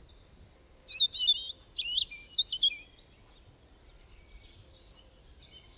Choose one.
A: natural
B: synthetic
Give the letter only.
A